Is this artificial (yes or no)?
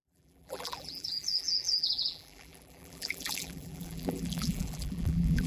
yes